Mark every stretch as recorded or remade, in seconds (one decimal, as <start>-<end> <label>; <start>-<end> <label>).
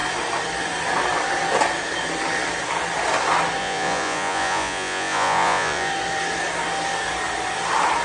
0.0-3.6 recorded; 3.6-5.9 remade; 5.9-8.0 recorded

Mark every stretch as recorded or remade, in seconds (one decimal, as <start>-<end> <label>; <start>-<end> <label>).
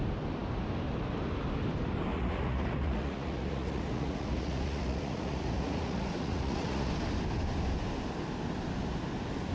0.0-2.1 recorded; 2.1-6.9 remade; 6.9-9.5 recorded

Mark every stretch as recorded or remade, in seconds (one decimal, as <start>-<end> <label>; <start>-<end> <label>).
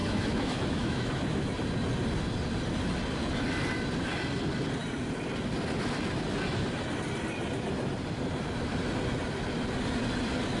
0.0-1.5 remade; 1.5-10.6 recorded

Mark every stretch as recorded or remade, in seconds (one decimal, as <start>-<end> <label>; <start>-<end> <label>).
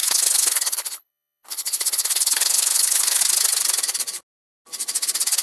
0.0-3.2 remade; 3.2-5.4 recorded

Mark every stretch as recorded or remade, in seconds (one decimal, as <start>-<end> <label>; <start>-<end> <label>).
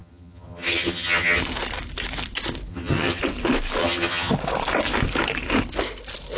0.0-1.4 remade; 1.4-2.7 recorded; 2.7-3.2 remade; 3.2-3.8 recorded; 3.8-4.3 remade; 4.3-6.4 recorded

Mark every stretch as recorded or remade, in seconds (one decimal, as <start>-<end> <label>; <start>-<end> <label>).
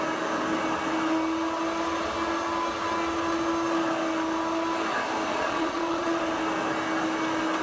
0.0-5.3 recorded; 5.3-6.2 remade; 6.2-7.6 recorded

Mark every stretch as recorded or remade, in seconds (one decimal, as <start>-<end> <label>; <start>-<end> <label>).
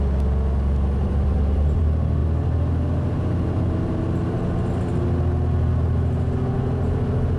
0.0-1.0 recorded; 1.0-1.8 remade; 1.8-7.4 recorded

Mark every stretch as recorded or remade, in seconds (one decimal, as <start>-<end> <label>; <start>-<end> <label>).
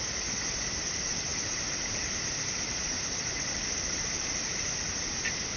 0.0-5.6 remade